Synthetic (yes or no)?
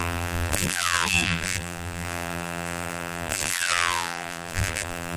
yes